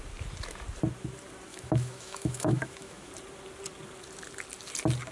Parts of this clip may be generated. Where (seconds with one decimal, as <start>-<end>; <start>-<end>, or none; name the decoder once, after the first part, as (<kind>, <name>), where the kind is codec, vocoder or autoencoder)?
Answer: 1.5-3.1 (autoencoder, DAC-VAE)